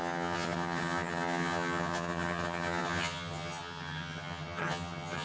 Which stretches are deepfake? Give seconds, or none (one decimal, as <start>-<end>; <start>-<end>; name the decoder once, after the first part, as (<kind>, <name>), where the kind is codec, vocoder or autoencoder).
0.0-5.2 (vocoder, HiFi-GAN)